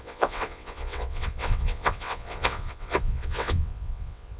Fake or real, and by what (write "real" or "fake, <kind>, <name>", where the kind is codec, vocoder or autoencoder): fake, vocoder, WaveNeXt